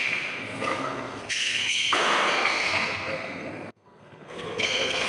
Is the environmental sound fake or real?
fake